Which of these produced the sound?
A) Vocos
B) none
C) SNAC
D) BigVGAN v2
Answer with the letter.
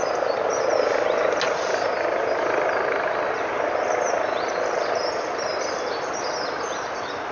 B